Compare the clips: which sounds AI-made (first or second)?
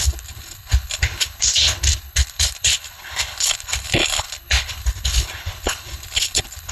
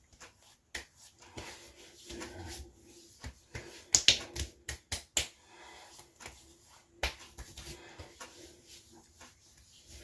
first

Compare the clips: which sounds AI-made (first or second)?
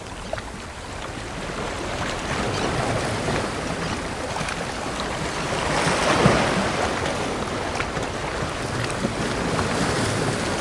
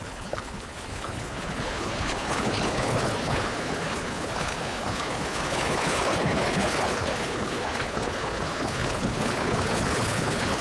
second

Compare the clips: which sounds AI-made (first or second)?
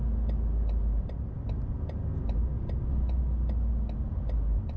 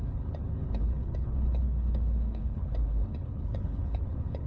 second